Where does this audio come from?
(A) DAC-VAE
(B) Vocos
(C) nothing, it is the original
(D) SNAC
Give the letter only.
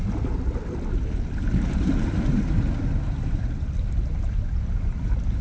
C